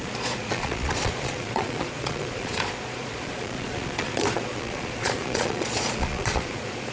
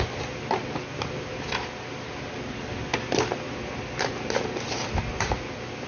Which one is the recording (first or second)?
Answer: second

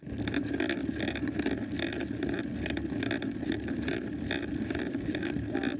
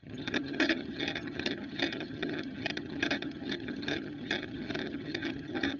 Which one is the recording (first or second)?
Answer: first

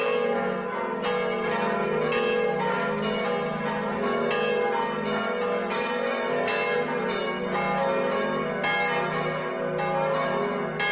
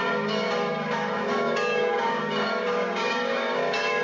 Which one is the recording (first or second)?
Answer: first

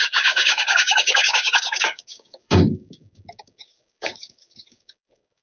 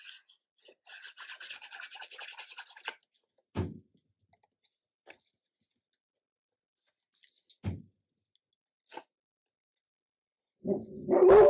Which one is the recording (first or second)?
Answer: second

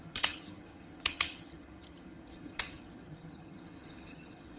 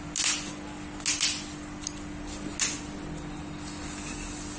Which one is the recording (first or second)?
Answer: second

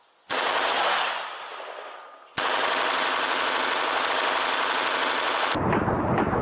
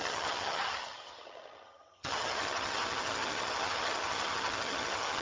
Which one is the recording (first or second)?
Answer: first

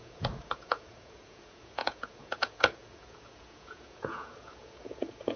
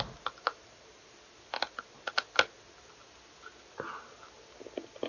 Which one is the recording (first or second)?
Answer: second